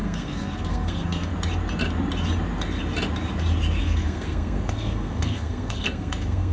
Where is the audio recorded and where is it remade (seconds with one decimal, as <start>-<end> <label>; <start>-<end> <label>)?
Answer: 0.0-1.3 remade; 1.3-3.8 recorded; 3.8-6.5 remade